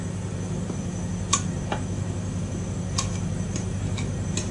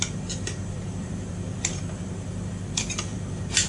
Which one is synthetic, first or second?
second